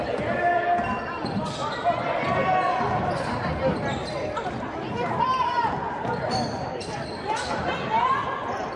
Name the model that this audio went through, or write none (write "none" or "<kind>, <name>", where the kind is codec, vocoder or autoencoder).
none